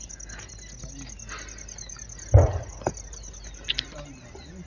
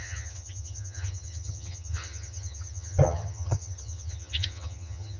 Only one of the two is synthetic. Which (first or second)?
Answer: second